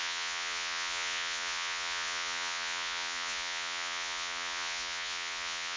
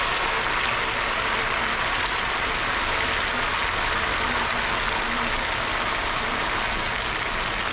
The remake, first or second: first